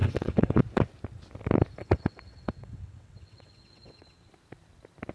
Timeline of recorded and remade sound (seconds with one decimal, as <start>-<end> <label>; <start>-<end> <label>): 0.0-0.6 remade; 0.6-1.8 recorded; 1.8-4.3 remade; 4.3-5.1 recorded